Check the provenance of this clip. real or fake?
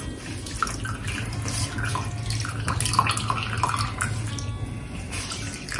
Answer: real